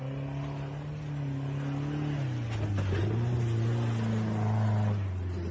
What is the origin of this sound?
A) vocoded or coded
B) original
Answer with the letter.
B